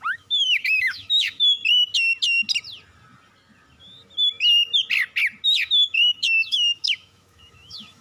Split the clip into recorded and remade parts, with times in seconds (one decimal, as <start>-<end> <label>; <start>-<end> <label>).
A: 0.0-1.6 remade; 1.6-5.7 recorded; 5.7-8.0 remade

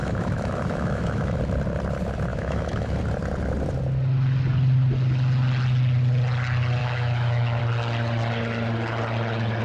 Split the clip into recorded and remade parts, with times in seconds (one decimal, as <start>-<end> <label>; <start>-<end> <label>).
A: 0.0-1.4 remade; 1.4-2.3 recorded; 2.3-3.0 remade; 3.0-6.8 recorded; 6.8-7.6 remade; 7.6-9.6 recorded

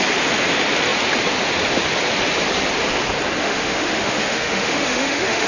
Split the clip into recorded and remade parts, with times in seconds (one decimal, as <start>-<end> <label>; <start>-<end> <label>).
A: 0.0-3.4 recorded; 3.4-5.5 remade